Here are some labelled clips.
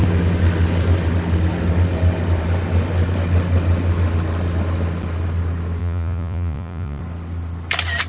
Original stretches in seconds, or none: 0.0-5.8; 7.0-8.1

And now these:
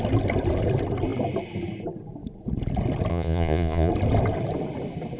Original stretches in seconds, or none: 0.0-3.1; 3.9-5.2

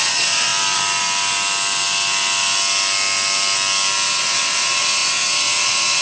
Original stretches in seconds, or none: 0.5-4.1